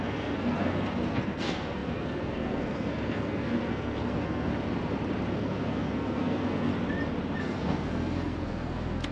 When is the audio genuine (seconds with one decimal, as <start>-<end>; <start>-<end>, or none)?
4.5-5.3; 6.7-7.4